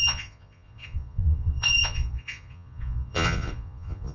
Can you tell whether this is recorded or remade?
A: remade